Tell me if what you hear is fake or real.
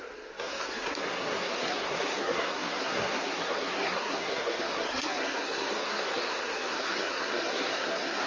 fake